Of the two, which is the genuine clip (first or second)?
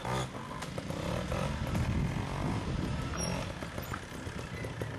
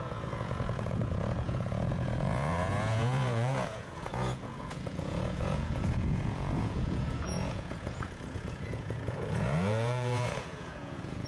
first